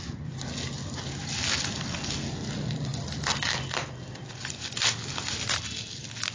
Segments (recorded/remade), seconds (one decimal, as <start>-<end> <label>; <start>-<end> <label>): 0.0-6.3 recorded